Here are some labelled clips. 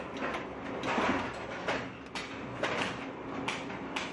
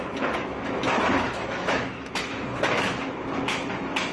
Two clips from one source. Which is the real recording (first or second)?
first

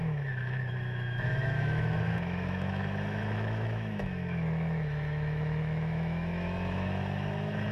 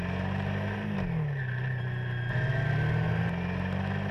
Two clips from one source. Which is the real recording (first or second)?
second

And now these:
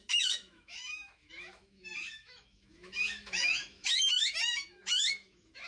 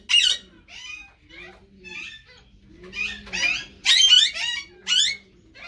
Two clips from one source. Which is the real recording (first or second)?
second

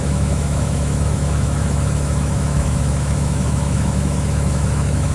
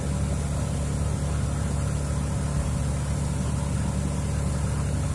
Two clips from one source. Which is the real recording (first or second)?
second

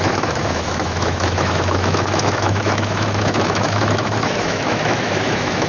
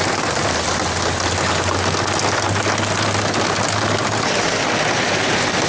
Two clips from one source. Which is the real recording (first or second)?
second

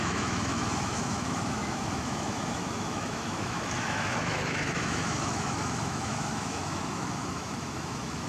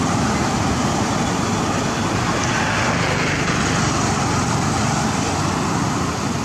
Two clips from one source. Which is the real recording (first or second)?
second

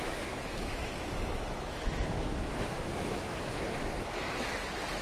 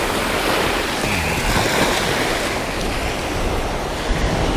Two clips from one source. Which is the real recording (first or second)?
second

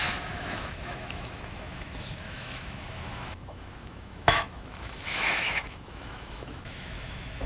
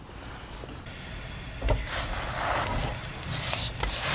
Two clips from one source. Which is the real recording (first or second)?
second